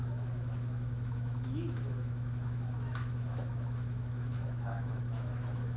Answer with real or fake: fake